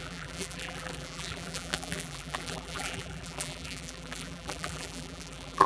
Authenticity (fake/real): fake